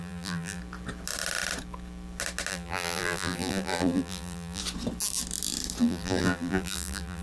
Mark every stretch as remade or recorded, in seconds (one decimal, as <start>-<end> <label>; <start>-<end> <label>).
0.0-0.6 remade; 0.6-2.5 recorded; 2.5-4.6 remade; 4.6-5.8 recorded; 5.8-7.2 remade